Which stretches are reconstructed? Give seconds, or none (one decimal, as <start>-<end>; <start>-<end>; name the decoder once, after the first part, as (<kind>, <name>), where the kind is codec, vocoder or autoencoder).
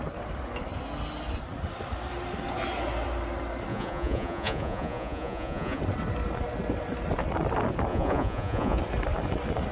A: 3.7-5.8 (vocoder, Vocos); 7.9-8.8